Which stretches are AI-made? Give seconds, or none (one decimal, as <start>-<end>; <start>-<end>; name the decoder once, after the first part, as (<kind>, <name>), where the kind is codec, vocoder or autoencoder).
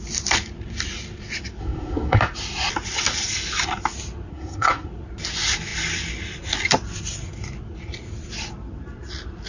1.6-2.2 (codec, SNAC); 4.3-4.9